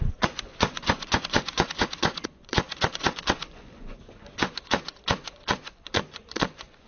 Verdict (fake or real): fake